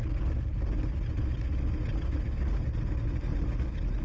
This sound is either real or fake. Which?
real